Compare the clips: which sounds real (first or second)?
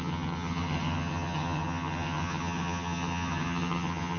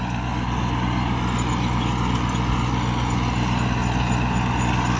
second